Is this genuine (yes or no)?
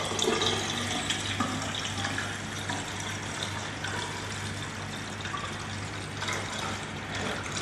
yes